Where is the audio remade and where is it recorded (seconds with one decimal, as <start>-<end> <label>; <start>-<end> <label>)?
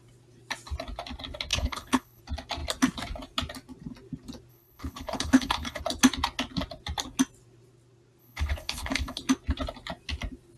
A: 0.0-1.5 recorded; 1.5-2.2 remade; 2.2-4.5 recorded; 4.5-5.8 remade; 5.8-8.2 recorded; 8.2-9.2 remade; 9.2-10.6 recorded